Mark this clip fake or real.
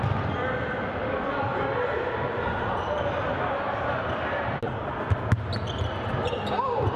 real